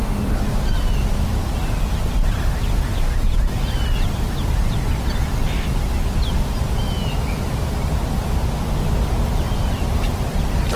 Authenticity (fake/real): real